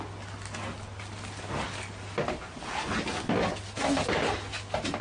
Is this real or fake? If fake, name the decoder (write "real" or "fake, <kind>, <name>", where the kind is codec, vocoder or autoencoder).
real